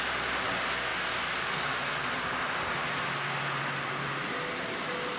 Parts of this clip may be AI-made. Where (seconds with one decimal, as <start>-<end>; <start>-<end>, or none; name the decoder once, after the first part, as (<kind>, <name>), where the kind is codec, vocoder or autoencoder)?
none

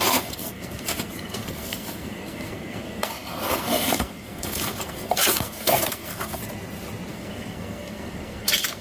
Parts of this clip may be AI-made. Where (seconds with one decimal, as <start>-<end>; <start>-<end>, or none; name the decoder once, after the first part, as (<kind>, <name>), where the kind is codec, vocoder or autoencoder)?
0.0-6.4 (codec, SNAC); 7.1-8.8

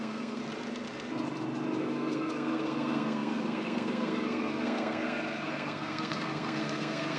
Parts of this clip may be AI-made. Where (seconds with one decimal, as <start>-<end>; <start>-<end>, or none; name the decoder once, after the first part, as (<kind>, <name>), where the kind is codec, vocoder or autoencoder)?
0.0-0.4 (codec, SNAC); 1.8-7.2

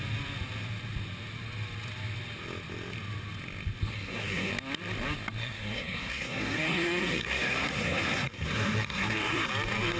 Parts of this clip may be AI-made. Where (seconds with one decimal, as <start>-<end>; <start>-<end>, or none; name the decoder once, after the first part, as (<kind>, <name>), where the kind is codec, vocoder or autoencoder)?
3.9-4.5 (codec, SNAC); 5.4-9.5

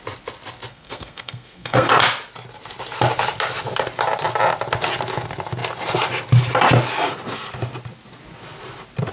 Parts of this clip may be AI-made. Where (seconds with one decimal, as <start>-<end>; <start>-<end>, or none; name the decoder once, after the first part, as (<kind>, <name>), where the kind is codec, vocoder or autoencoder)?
0.7-1.9 (codec, SNAC)

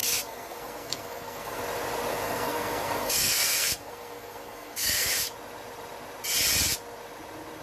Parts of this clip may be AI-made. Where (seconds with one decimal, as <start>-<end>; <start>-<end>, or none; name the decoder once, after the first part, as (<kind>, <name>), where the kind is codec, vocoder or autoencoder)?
0.0-1.6 (codec, SNAC); 2.1-5.1